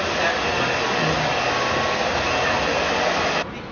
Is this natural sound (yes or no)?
yes